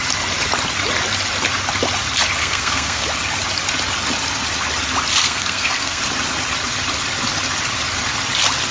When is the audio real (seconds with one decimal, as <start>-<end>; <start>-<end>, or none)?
0.0-2.4; 3.0-5.2; 6.0-8.7